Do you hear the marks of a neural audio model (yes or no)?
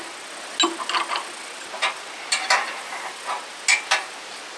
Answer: no